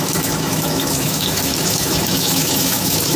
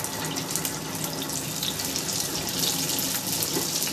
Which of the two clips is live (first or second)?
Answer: second